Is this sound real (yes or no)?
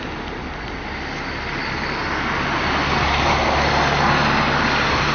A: yes